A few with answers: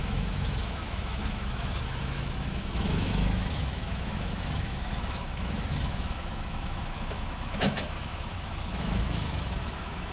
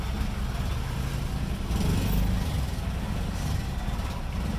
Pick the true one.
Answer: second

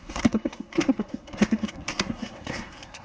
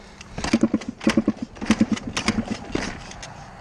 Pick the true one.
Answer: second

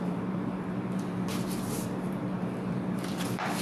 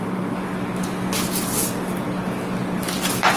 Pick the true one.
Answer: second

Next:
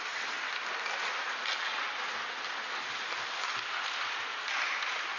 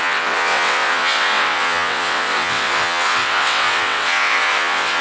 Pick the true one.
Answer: first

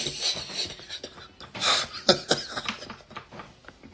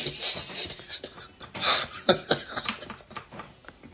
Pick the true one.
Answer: first